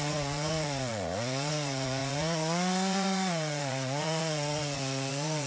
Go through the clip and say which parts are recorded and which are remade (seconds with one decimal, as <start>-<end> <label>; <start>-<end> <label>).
0.0-5.5 remade